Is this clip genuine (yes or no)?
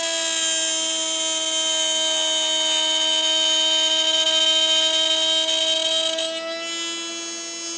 yes